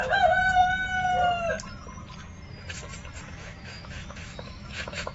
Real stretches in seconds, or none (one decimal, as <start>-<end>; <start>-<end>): 0.6-3.2